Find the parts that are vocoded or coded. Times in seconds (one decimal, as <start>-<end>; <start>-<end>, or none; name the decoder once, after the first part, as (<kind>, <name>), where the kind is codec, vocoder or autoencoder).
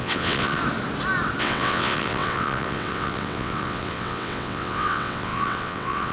0.0-0.6 (vocoder, WaveNeXt); 1.4-6.1